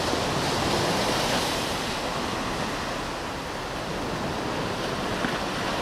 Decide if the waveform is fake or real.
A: real